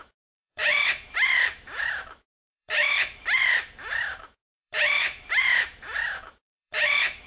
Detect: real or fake fake